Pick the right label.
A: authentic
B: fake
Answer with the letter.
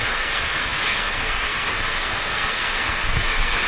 B